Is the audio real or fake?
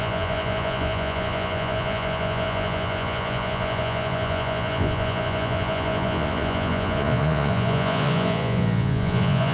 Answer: fake